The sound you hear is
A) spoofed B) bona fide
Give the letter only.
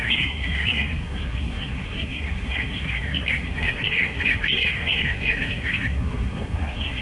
A